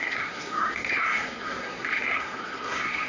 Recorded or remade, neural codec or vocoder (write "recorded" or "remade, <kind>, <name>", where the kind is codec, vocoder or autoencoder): remade, codec, SNAC